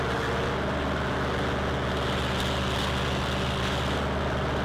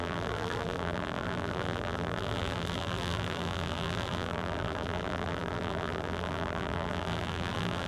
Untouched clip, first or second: first